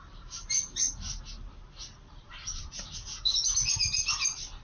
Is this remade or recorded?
recorded